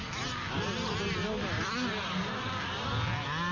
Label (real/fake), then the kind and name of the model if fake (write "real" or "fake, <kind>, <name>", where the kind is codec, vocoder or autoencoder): real